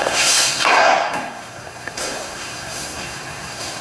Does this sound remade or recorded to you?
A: remade